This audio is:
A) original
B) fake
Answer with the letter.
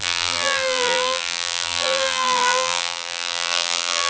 B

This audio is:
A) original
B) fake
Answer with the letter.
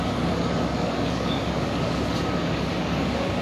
B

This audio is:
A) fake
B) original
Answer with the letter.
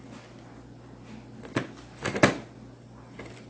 B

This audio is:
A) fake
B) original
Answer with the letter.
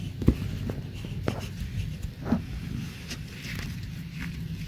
B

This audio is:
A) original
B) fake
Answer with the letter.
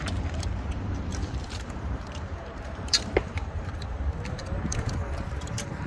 B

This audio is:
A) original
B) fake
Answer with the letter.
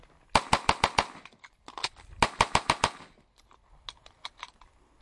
A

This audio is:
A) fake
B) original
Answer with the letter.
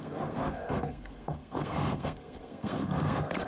A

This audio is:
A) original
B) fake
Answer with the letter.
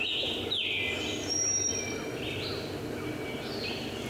A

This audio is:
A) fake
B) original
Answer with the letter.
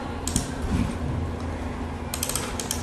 B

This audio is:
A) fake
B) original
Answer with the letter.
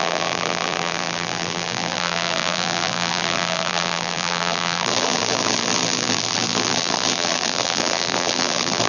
A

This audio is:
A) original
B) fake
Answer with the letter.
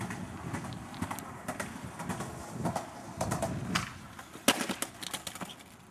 A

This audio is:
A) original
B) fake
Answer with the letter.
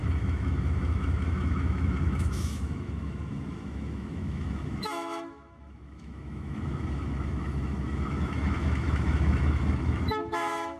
B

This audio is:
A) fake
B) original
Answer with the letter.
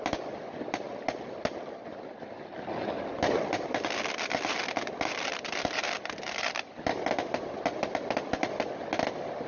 B